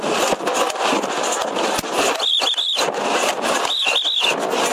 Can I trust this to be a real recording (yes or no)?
yes